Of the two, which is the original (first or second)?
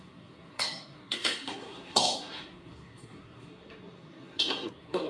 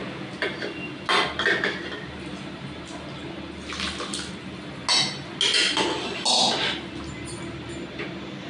second